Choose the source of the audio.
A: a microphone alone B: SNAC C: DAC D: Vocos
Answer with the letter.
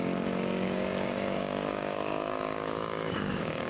C